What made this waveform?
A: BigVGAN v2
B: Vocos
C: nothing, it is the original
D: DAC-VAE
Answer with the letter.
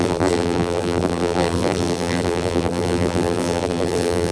A